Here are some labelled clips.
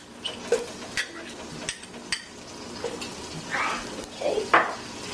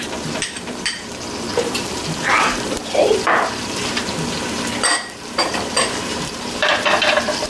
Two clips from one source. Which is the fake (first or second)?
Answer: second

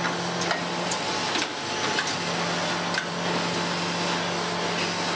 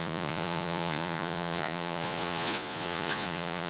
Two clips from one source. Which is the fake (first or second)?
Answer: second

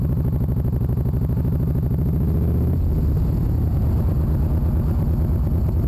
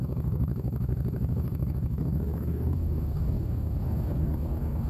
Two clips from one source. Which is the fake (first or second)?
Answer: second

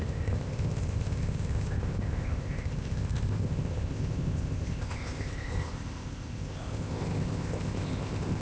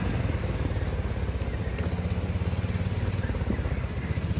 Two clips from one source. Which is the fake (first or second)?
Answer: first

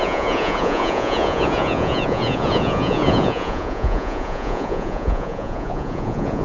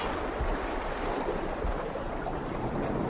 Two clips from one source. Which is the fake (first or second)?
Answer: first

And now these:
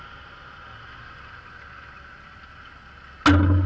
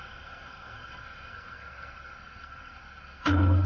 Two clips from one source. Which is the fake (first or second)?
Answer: second